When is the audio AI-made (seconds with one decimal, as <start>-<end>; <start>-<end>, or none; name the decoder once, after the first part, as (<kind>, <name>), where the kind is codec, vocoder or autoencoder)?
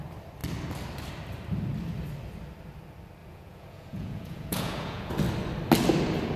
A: 3.2-5.1 (vocoder, Vocos)